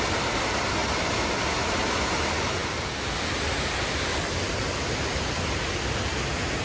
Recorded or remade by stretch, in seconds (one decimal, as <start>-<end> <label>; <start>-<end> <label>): 0.0-6.6 recorded